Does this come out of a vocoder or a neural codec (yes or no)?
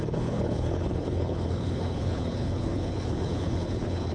yes